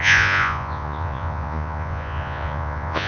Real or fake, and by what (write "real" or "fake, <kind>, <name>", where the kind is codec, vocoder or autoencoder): fake, vocoder, Vocos